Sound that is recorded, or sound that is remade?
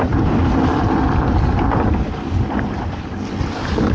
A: recorded